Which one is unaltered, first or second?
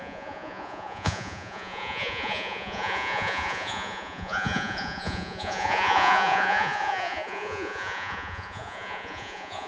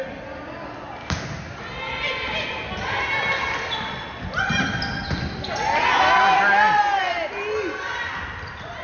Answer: second